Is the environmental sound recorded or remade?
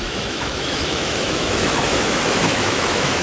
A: remade